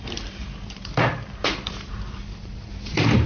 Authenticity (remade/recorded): remade